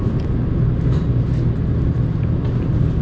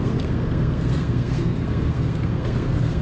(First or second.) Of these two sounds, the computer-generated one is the second